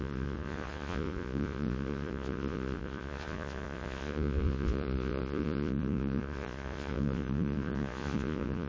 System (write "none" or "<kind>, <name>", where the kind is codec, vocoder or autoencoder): vocoder, Vocos